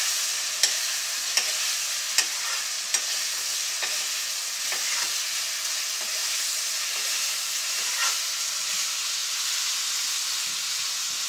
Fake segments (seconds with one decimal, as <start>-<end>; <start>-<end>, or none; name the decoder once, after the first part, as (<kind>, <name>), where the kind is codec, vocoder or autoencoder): 6.2-7.9 (vocoder, BigVGAN v2); 9.2-9.7